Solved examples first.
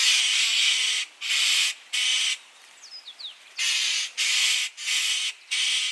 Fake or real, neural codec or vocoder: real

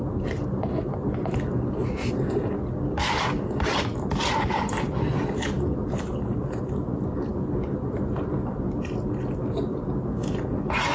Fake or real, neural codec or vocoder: real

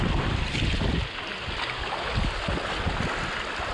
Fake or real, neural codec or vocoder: real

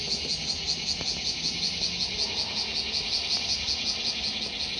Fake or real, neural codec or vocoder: real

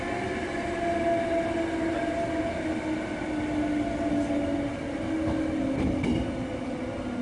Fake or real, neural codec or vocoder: real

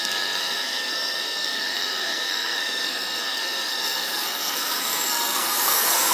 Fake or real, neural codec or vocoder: fake, codec, SNAC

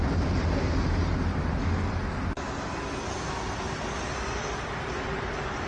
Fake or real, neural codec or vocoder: real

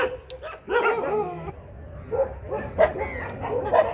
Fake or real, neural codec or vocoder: real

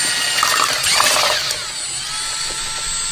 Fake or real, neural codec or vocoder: real